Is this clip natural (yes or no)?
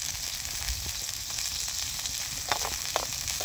yes